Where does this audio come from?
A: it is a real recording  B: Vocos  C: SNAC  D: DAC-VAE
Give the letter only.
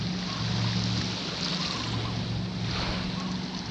A